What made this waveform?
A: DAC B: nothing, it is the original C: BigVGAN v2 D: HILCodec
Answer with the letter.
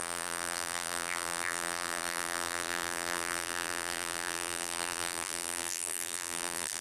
C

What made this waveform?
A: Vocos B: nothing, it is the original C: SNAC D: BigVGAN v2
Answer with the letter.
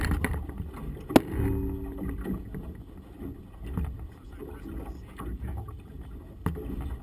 B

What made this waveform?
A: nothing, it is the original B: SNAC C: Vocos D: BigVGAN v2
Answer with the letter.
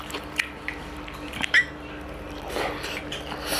A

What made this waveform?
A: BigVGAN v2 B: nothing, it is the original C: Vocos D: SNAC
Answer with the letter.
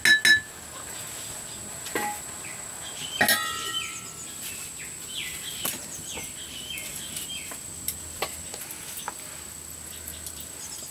B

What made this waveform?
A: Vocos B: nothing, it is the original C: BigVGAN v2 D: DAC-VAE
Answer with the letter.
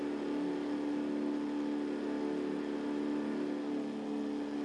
B